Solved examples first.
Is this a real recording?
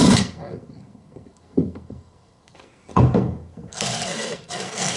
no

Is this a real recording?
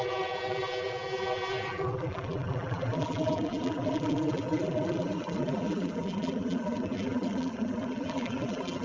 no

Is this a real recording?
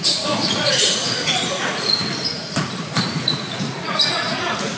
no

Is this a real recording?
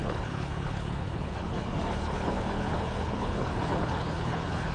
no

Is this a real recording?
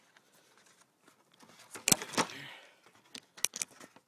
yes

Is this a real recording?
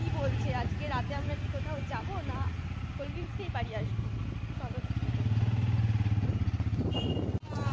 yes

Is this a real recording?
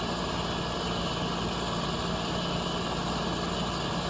yes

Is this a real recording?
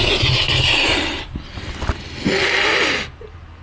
yes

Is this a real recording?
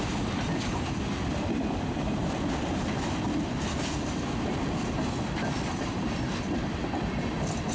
no